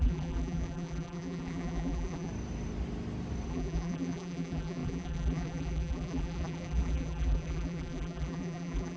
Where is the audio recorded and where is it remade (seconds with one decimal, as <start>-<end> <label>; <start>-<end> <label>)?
0.0-2.3 remade; 2.3-3.5 recorded; 3.5-9.0 remade